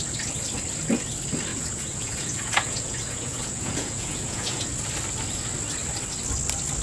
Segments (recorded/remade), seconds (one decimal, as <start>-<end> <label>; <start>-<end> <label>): 0.0-1.5 recorded; 1.5-4.7 remade; 4.7-6.8 recorded